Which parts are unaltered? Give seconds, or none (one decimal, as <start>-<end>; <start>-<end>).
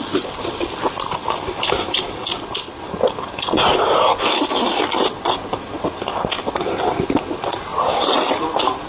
0.0-7.7